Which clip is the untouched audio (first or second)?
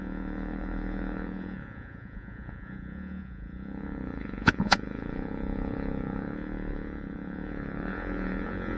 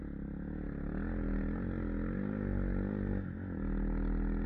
second